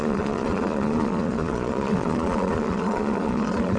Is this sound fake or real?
fake